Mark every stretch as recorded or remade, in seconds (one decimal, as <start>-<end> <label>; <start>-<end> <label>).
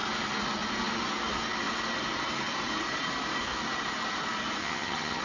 0.0-4.6 recorded; 4.6-5.2 remade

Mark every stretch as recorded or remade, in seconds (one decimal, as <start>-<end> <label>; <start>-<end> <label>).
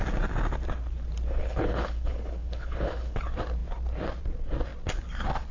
0.0-1.4 recorded; 1.4-3.2 remade; 3.2-5.5 recorded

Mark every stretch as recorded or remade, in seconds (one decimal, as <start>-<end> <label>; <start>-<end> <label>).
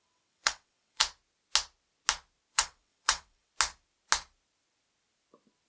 0.0-1.0 remade; 1.0-2.5 recorded; 2.5-3.5 remade; 3.5-5.7 recorded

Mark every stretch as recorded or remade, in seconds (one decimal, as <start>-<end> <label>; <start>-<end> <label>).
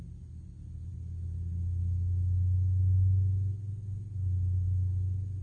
0.0-5.4 recorded